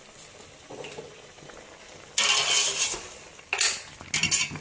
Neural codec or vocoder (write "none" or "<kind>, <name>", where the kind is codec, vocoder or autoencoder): none